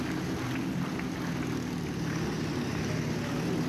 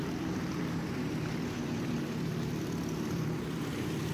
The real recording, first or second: first